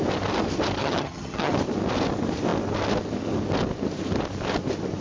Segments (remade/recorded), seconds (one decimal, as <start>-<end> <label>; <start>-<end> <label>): 0.0-0.8 recorded; 0.8-1.5 remade; 1.5-5.0 recorded